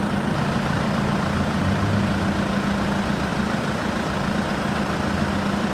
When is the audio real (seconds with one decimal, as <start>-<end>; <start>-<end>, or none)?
0.0-5.7